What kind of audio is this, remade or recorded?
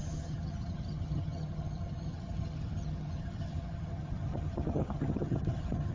remade